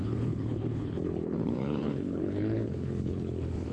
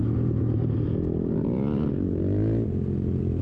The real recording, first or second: second